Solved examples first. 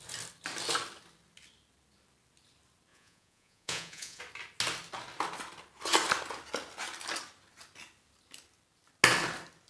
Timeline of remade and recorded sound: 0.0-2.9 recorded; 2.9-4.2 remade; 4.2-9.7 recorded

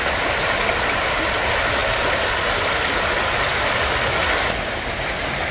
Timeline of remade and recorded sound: 0.0-5.5 recorded

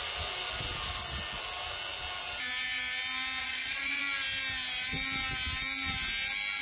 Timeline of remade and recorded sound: 0.0-3.4 recorded; 3.4-4.0 remade; 4.0-6.6 recorded